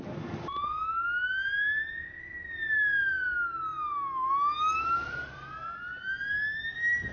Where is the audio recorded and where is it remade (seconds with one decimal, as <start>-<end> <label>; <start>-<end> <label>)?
0.0-7.1 recorded